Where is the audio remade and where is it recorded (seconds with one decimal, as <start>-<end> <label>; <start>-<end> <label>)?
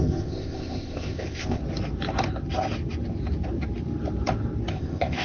0.0-1.6 remade; 1.6-4.7 recorded; 4.7-5.2 remade